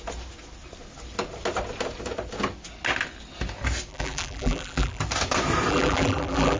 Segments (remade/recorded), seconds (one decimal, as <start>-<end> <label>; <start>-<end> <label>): 0.0-3.9 recorded; 3.9-5.0 remade; 5.0-5.7 recorded; 5.7-6.6 remade